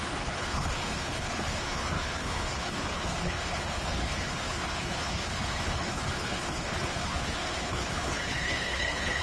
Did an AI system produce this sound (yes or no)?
yes